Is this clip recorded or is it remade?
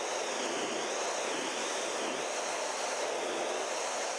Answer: recorded